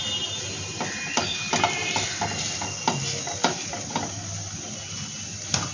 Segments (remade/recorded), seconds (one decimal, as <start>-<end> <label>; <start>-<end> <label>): 0.0-5.7 recorded